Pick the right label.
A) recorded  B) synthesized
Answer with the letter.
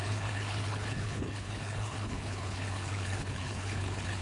B